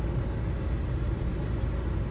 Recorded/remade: recorded